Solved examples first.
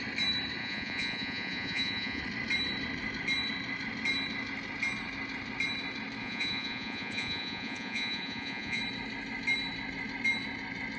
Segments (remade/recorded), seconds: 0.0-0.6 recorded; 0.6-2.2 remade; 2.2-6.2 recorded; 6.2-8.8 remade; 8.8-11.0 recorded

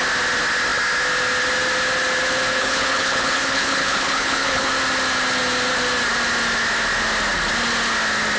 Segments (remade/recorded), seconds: 0.0-2.5 recorded; 2.5-4.7 remade; 4.7-8.4 recorded

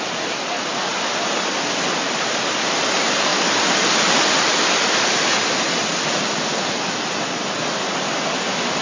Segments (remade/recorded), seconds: 0.0-8.8 recorded

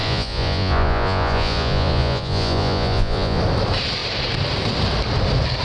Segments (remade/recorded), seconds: 0.0-3.4 remade; 3.4-5.6 recorded

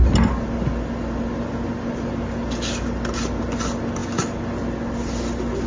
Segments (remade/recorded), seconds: 0.0-5.7 recorded